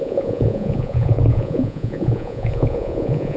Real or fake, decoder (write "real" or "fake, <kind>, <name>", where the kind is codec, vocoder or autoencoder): fake, vocoder, Vocos